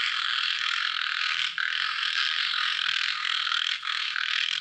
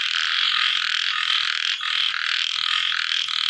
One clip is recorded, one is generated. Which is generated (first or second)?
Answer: first